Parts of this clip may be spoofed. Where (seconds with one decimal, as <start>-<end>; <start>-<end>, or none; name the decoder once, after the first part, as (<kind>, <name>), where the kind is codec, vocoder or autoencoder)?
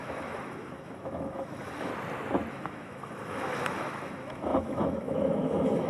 0.0-1.9 (autoencoder, DAC-VAE); 2.5-5.9